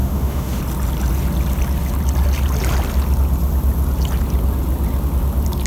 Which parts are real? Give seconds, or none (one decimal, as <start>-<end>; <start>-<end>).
0.6-5.7